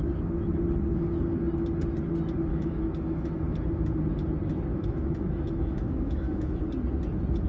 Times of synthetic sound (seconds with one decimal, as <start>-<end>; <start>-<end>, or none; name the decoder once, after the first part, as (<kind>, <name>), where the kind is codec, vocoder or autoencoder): 2.5-3.3 (autoencoder, DAC-VAE); 4.7-6.6